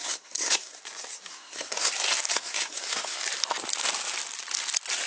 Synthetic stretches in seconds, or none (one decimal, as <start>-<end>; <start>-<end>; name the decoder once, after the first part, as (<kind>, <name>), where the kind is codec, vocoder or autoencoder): 0.0-0.8 (codec, SNAC); 1.3-1.9; 2.3-3.2